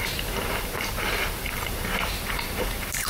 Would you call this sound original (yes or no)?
no